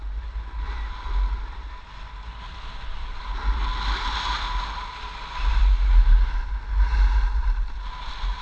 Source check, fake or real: real